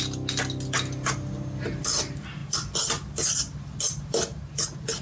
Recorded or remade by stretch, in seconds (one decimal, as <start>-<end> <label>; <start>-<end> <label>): 0.0-5.0 recorded